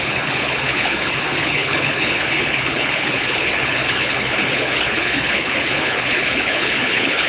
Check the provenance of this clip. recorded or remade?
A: remade